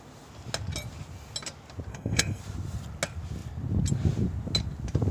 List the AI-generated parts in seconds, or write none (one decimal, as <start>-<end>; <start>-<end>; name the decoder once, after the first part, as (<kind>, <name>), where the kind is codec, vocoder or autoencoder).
1.9-2.4 (codec, SNAC)